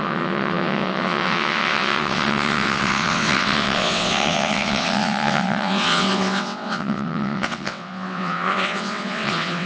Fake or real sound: fake